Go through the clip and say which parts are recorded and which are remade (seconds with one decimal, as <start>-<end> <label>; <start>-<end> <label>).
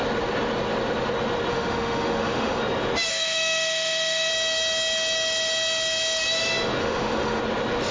0.0-1.5 recorded; 1.5-2.6 remade; 2.6-3.1 recorded; 3.1-4.3 remade; 4.3-6.8 recorded; 6.8-7.4 remade; 7.4-7.9 recorded